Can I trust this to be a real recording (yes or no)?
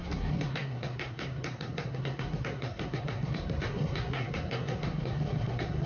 no